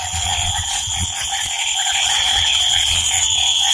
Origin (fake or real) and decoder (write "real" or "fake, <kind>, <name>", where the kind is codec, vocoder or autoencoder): fake, vocoder, Vocos